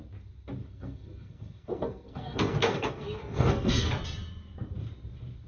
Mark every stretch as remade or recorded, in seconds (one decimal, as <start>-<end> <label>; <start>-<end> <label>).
0.0-0.6 recorded; 0.6-3.9 remade; 3.9-5.5 recorded